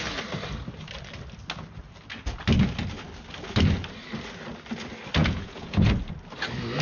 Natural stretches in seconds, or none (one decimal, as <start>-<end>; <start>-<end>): 0.0-5.2; 5.9-6.8